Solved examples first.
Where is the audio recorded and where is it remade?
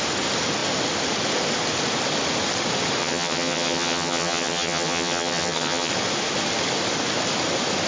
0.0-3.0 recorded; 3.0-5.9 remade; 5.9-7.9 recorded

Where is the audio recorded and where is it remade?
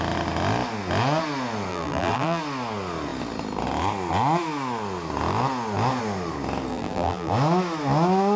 0.0-1.7 recorded; 1.7-2.4 remade; 2.4-6.7 recorded; 6.7-7.3 remade; 7.3-8.4 recorded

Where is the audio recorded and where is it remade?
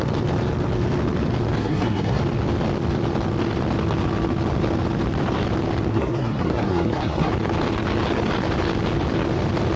0.0-1.6 recorded; 1.6-2.2 remade; 2.2-5.9 recorded; 5.9-7.3 remade; 7.3-9.8 recorded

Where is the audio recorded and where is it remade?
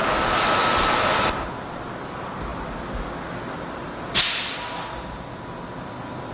0.0-6.3 recorded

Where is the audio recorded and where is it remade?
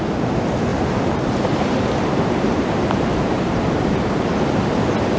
0.0-0.7 recorded; 0.7-3.8 remade; 3.8-5.2 recorded